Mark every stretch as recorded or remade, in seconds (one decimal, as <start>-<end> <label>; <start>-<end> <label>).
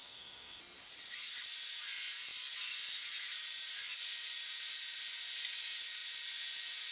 0.0-0.6 remade; 0.6-6.9 recorded